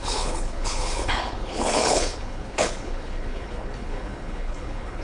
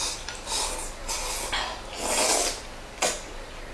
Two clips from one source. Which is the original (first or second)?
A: second